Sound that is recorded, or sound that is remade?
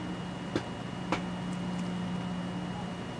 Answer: recorded